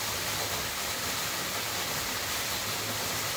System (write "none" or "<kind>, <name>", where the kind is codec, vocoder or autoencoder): none